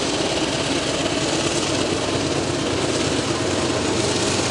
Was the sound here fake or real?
real